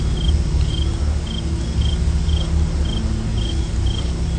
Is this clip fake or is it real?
real